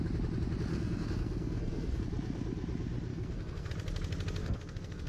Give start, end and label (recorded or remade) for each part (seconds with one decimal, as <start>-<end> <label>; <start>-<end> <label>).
0.0-0.7 recorded; 0.7-2.0 remade; 2.0-3.1 recorded; 3.1-3.7 remade; 3.7-4.4 recorded; 4.4-5.1 remade